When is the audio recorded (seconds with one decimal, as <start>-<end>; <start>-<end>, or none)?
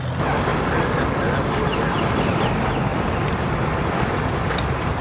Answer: 0.0-5.0